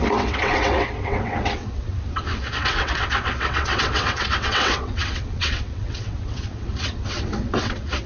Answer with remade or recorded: remade